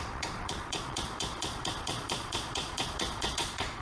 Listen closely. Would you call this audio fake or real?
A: fake